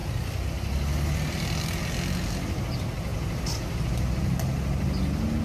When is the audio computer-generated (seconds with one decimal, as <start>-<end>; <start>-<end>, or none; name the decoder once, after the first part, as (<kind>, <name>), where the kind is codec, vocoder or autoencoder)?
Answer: none